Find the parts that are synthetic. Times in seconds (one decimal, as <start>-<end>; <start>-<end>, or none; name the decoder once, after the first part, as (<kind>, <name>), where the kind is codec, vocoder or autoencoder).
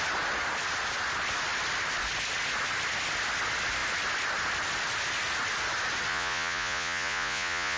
6.1-7.8 (vocoder, Vocos)